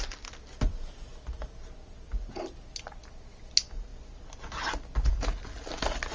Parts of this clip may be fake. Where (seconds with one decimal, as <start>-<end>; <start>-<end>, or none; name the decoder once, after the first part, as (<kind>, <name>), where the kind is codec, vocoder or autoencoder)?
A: none